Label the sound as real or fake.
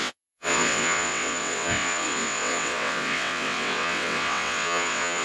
fake